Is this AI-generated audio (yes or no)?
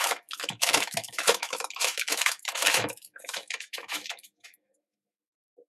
yes